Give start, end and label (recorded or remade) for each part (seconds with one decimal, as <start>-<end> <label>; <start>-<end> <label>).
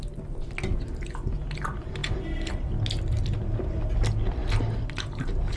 0.0-4.4 recorded; 4.4-5.6 remade